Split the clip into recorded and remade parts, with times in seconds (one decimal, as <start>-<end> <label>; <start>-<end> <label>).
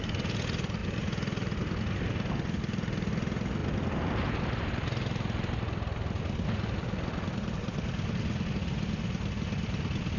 0.0-10.2 recorded